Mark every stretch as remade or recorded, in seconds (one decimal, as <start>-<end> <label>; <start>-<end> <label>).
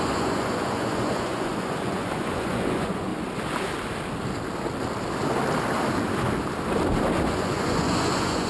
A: 0.0-3.1 remade; 3.1-7.3 recorded; 7.3-8.5 remade